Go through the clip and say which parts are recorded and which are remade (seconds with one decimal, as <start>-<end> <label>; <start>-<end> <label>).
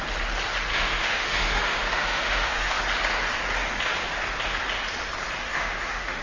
0.0-0.7 recorded; 0.7-2.8 remade; 2.8-5.4 recorded; 5.4-6.2 remade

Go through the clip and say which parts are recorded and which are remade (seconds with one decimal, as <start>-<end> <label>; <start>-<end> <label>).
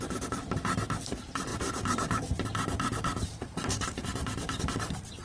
0.0-1.5 recorded; 1.5-4.6 remade; 4.6-5.2 recorded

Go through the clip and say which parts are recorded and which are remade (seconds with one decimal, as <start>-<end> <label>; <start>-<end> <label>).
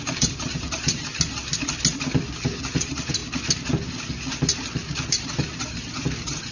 0.0-1.1 remade; 1.1-2.7 recorded; 2.7-3.2 remade; 3.2-5.1 recorded; 5.1-6.5 remade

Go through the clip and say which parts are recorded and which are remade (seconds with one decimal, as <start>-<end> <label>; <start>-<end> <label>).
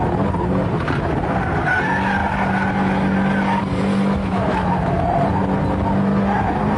0.0-4.2 recorded; 4.2-5.0 remade; 5.0-6.8 recorded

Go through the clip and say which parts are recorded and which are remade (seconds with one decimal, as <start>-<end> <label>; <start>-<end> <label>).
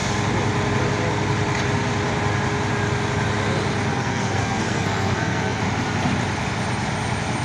0.0-3.9 recorded; 3.9-5.6 remade; 5.6-7.4 recorded